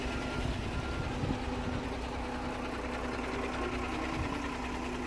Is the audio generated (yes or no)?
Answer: no